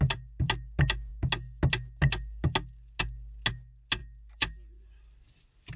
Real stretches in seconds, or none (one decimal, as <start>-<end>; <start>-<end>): 0.0-5.8